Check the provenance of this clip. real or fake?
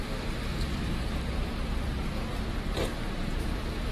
fake